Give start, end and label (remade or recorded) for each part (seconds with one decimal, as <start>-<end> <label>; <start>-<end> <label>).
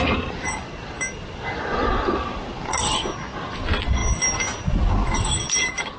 0.0-6.0 recorded